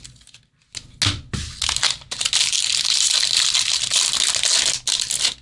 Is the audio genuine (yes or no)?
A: yes